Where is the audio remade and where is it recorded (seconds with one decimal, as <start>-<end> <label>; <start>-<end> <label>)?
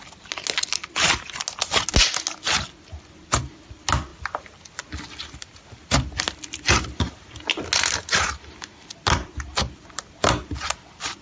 0.0-11.2 recorded